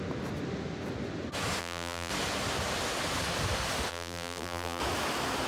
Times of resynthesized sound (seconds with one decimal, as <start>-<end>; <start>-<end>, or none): 1.6-2.1; 3.9-4.8